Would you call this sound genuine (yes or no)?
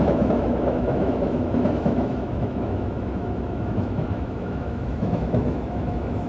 no